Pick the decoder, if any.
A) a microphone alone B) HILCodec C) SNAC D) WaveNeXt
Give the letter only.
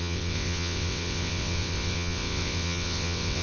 D